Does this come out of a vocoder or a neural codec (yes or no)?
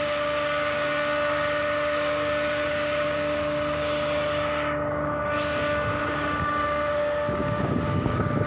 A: yes